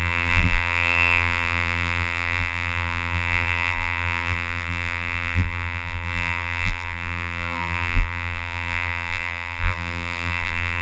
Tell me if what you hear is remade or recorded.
remade